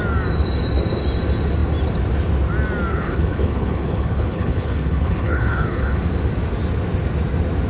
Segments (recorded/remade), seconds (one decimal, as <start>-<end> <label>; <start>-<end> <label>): 0.0-2.9 recorded; 2.9-6.0 remade; 6.0-7.7 recorded